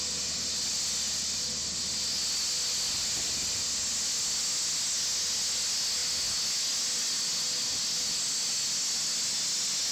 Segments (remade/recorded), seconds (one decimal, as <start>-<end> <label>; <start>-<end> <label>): 0.0-9.9 recorded